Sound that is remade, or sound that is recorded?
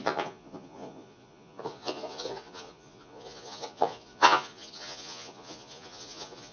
remade